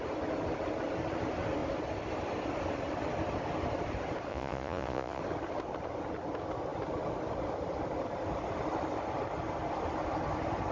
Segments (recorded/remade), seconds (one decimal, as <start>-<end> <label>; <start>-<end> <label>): 0.0-4.3 recorded; 4.3-5.2 remade; 5.2-10.7 recorded